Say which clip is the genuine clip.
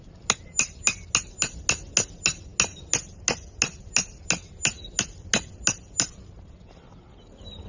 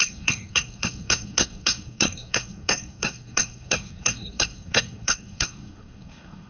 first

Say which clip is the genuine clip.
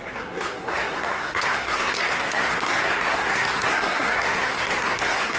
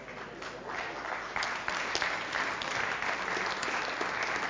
second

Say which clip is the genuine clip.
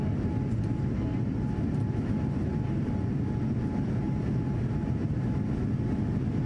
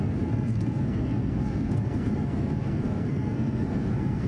first